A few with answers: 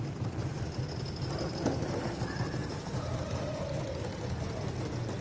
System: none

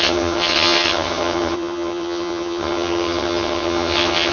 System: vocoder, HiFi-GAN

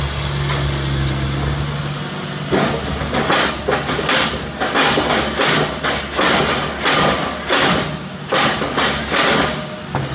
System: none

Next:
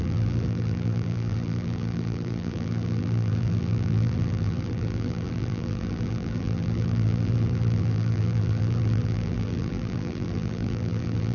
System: vocoder, BigVGAN v2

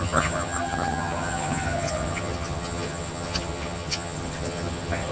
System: vocoder, HiFi-GAN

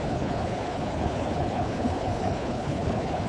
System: codec, HILCodec